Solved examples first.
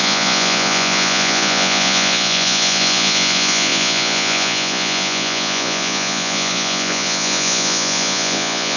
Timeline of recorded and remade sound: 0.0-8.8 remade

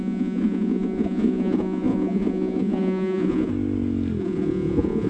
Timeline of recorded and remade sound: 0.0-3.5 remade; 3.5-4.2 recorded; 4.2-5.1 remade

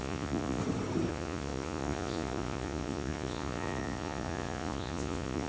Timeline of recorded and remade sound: 0.0-0.6 remade; 0.6-1.1 recorded; 1.1-5.5 remade

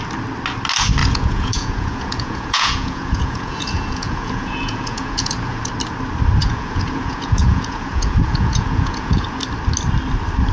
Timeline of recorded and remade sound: 0.0-1.0 recorded; 1.0-5.7 remade; 5.7-6.4 recorded; 6.4-9.4 remade; 9.4-10.5 recorded

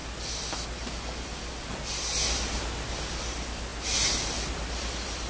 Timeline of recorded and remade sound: 0.0-5.3 recorded

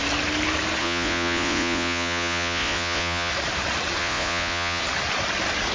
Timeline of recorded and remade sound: 0.0-0.8 recorded; 0.8-3.3 remade; 3.3-4.0 recorded; 4.0-4.8 remade; 4.8-5.7 recorded